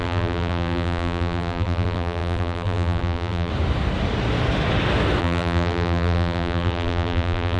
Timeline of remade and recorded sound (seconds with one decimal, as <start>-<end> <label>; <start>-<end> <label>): 0.0-3.5 remade; 3.5-5.2 recorded; 5.2-7.6 remade